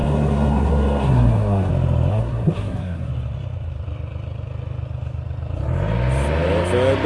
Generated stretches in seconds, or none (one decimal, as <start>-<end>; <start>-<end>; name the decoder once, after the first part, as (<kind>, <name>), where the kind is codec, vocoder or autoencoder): 0.0-1.7 (codec, SNAC); 2.1-3.1